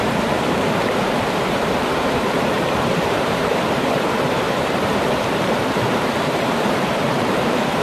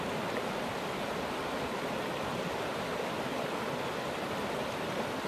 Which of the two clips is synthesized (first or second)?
first